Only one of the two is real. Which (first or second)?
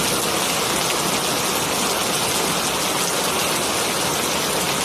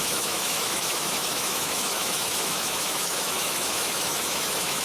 first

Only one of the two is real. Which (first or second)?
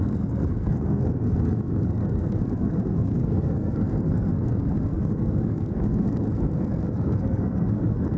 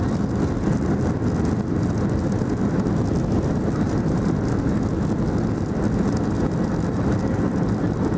second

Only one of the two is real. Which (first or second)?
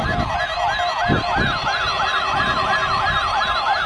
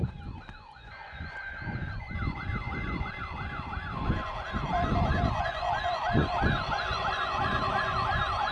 first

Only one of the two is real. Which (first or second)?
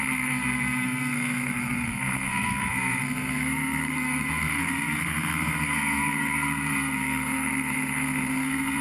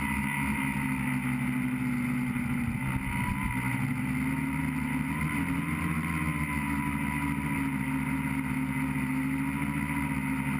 second